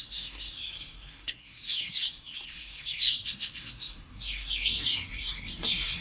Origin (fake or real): fake